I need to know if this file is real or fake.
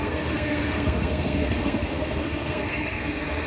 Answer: fake